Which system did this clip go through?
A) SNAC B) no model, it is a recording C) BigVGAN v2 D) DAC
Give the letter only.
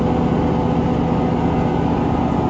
B